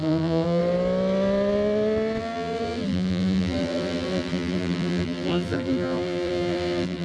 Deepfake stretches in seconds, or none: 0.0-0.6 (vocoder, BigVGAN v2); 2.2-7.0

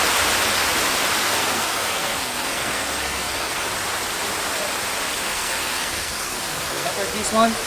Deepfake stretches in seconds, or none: 1.2-3.7 (codec, SNAC); 5.3-6.9

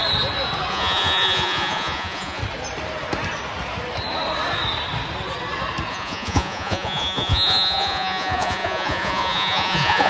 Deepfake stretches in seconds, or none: 0.7-2.4 (vocoder, Vocos); 5.9-10.1